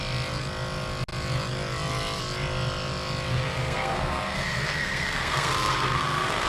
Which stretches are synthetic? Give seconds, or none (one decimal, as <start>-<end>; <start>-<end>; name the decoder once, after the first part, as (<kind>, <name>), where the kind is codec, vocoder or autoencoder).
3.3-6.5 (codec, SNAC)